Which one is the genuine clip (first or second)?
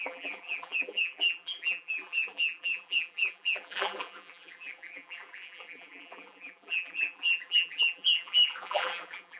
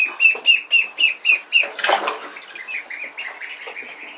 second